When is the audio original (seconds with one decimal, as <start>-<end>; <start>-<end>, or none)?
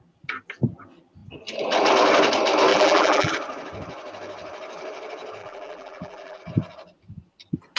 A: 0.0-2.7; 3.3-5.4; 6.4-7.8